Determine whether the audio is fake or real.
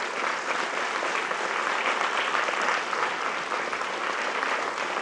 real